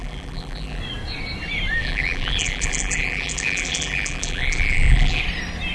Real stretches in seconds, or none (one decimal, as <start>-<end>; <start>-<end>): 0.8-1.8; 5.2-5.7